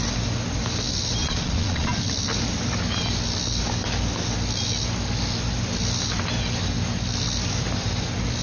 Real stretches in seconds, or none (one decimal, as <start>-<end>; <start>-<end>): 0.0-1.2; 2.0-8.4